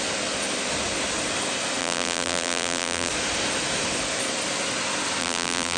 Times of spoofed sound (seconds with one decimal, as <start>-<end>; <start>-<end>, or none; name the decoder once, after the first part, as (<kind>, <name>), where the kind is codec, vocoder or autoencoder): 1.8-3.1 (vocoder, BigVGAN v2); 5.2-5.8